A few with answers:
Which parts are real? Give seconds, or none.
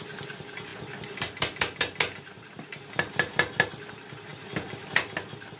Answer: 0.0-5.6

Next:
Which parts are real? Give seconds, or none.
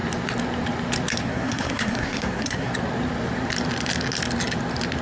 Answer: 0.0-1.2; 2.7-5.0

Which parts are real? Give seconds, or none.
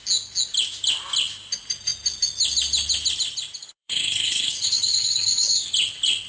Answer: 0.0-3.6; 5.7-6.3